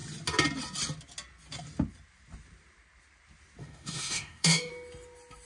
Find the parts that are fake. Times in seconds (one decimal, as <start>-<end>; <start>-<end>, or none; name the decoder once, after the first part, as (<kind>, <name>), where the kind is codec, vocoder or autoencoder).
3.6-4.7 (autoencoder, DAC-VAE)